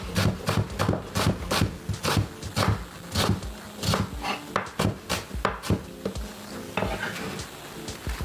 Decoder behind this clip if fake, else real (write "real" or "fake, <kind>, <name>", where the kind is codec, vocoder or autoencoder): real